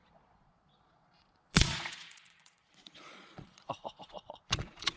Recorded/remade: remade